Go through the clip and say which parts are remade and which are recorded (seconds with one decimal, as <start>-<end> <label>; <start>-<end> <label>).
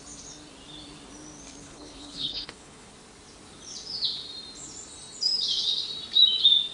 0.0-1.6 recorded; 1.6-2.9 remade; 2.9-6.7 recorded